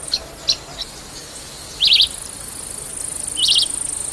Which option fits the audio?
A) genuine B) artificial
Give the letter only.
A